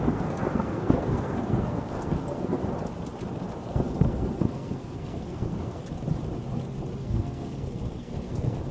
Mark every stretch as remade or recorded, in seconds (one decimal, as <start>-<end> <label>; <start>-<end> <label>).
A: 0.0-2.6 remade; 2.6-3.7 recorded; 3.7-5.8 remade; 5.8-7.0 recorded; 7.0-8.7 remade